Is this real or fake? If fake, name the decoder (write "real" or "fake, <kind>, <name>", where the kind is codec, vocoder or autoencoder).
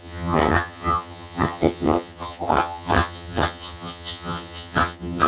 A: fake, vocoder, HiFi-GAN